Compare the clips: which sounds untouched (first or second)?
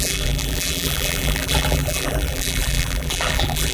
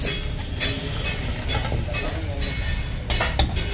second